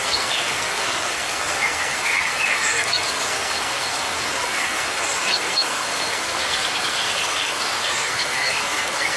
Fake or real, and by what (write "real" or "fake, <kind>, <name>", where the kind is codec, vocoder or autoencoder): fake, codec, SNAC